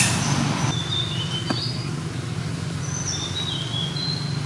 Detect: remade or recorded recorded